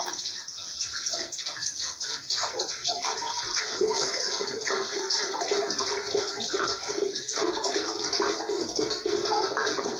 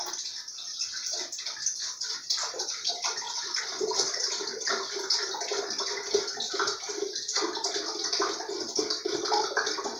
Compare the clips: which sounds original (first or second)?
second